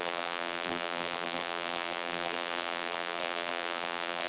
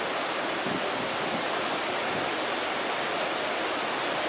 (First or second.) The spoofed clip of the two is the first